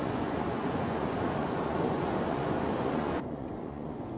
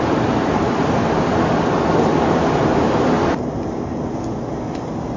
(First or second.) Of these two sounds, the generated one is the first